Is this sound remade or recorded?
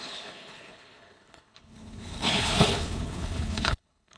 remade